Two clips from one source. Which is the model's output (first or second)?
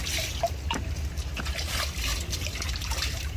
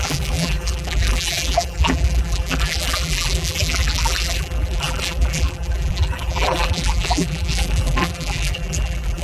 second